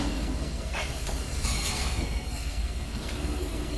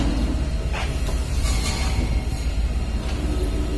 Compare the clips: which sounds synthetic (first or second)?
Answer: first